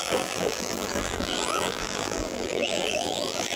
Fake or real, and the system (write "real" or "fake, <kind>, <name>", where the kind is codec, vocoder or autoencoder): fake, vocoder, BigVGAN v2